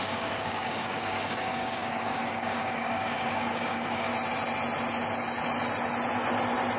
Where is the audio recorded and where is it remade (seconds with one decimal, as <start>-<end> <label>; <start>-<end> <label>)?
0.0-4.1 remade; 4.1-6.8 recorded

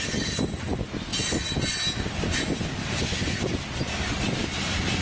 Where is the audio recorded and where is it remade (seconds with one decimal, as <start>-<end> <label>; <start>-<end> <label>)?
0.0-5.0 recorded

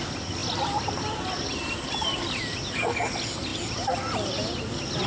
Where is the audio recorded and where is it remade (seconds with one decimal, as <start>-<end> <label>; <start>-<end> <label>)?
0.0-5.1 recorded

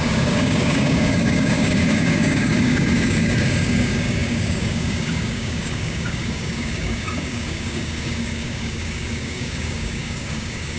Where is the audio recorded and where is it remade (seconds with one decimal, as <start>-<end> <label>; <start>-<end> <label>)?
0.0-10.8 remade

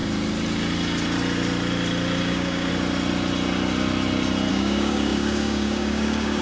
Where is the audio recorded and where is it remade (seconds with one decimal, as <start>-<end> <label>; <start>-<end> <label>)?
0.0-2.2 recorded; 2.2-2.7 remade; 2.7-4.5 recorded; 4.5-6.4 remade

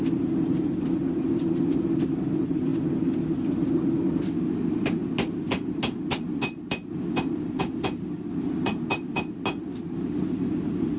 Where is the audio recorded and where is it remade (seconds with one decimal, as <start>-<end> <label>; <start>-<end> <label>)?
0.0-11.0 recorded